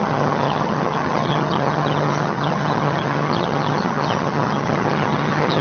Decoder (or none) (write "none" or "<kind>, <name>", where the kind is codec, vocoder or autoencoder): vocoder, HiFi-GAN